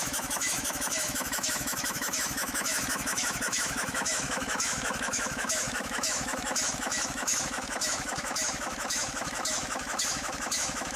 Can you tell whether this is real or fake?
fake